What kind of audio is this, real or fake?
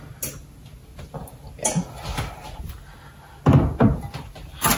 real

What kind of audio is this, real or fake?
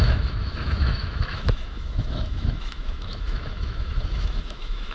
fake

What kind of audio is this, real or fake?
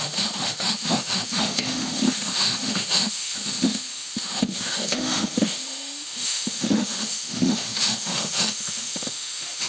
fake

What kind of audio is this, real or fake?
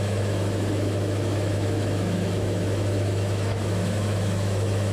fake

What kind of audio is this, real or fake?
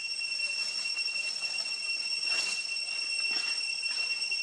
real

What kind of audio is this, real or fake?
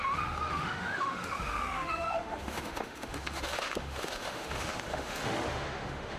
fake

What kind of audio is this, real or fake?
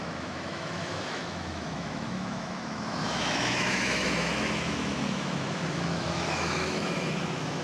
fake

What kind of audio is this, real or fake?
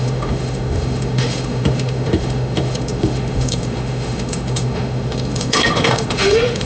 fake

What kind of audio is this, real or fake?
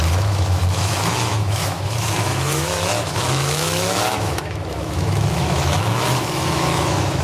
fake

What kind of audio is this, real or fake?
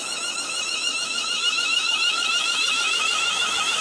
fake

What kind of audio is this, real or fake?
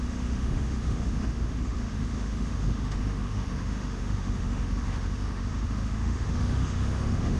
fake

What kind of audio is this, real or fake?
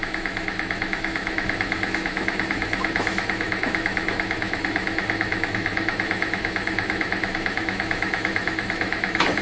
fake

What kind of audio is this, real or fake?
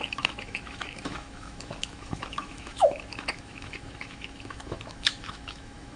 fake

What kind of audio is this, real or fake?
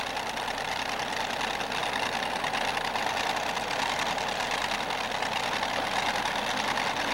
real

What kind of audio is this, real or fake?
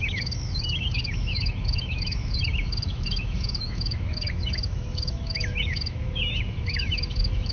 fake